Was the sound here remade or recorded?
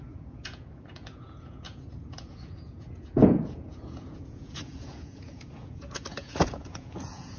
remade